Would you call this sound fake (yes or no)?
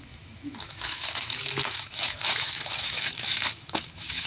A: yes